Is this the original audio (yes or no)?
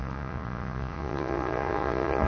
no